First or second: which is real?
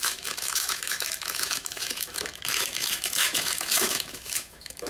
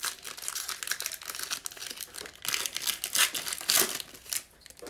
second